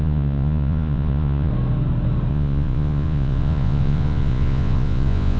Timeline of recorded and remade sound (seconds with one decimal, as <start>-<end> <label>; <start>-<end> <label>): 0.0-1.5 remade; 1.5-2.3 recorded; 2.3-5.4 remade